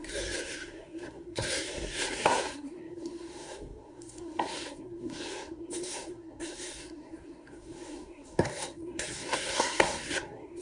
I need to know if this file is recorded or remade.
remade